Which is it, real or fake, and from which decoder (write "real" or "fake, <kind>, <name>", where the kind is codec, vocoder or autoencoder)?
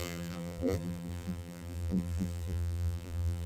fake, vocoder, BigVGAN v2